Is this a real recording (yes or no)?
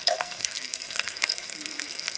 no